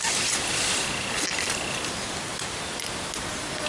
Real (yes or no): yes